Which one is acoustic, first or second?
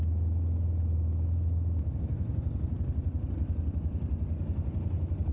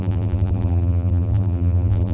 first